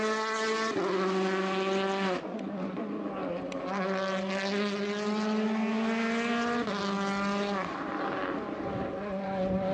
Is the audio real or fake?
real